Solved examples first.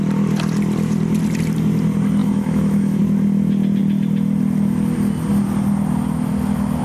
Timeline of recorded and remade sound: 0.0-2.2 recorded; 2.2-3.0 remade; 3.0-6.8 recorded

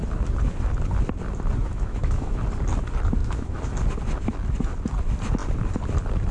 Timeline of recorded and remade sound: 0.0-1.6 recorded; 1.6-2.4 remade; 2.4-3.2 recorded; 3.2-3.7 remade; 3.7-6.3 recorded

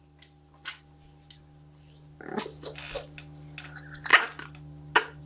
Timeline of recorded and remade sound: 0.0-5.2 recorded

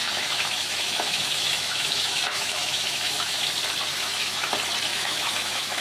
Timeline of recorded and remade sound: 0.0-3.5 remade; 3.5-3.9 recorded; 3.9-4.5 remade; 4.5-4.9 recorded; 4.9-5.8 remade